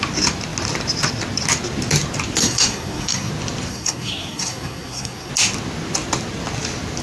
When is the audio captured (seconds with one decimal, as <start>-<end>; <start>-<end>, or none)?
0.0-2.4; 3.3-3.7; 5.3-7.0